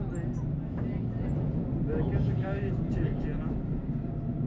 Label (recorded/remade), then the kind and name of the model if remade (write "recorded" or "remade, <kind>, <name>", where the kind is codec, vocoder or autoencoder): recorded